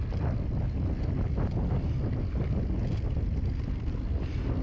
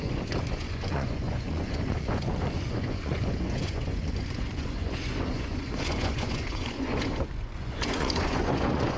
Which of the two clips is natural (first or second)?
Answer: first